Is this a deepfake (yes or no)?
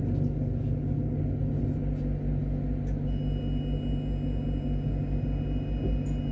no